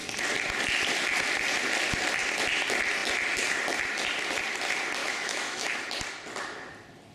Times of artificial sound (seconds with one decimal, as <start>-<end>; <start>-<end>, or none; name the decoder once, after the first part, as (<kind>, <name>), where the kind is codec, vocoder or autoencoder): 5.0-5.8 (autoencoder, DAC-VAE)